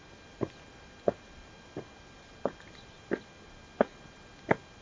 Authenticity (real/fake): real